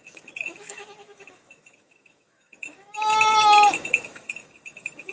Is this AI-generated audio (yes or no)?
yes